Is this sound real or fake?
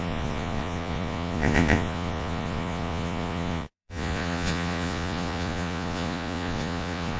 fake